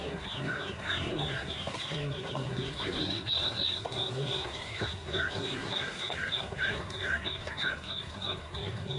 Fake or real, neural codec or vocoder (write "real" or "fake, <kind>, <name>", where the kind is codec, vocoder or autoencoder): fake, codec, SNAC